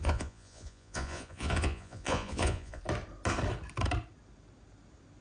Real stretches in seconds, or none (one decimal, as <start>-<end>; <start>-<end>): 2.8-5.2